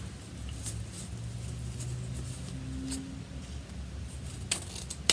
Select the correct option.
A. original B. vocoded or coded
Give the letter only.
A